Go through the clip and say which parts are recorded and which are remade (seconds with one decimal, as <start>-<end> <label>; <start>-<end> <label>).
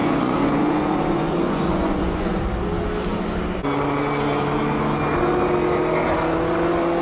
0.0-2.4 remade; 2.4-7.0 recorded